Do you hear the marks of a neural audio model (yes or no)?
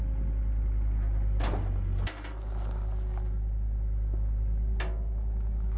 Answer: no